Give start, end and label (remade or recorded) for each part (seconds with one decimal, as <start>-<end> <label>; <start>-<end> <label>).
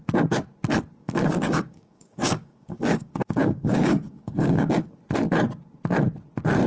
0.0-1.0 recorded; 1.0-5.0 remade; 5.0-6.7 recorded